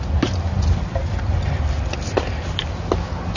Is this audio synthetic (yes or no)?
no